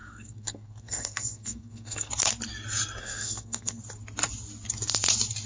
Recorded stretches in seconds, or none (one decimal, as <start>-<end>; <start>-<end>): 2.1-3.0; 3.8-5.5